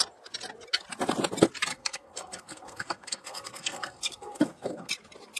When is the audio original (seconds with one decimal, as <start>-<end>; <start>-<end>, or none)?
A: 0.0-1.7; 4.9-5.4